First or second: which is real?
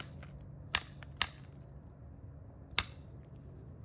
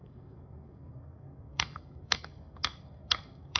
first